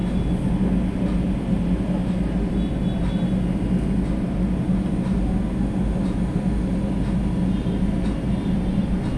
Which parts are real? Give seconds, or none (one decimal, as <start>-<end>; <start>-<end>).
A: 0.0-9.2